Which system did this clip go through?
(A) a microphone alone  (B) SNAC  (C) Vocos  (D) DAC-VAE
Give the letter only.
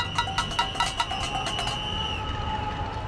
A